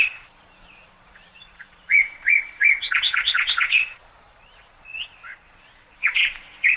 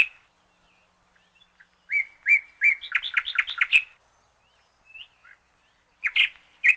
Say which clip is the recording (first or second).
second